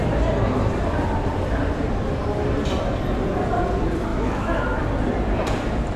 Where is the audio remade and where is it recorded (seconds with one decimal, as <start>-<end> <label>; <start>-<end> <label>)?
0.0-4.1 recorded; 4.1-4.8 remade; 4.8-6.0 recorded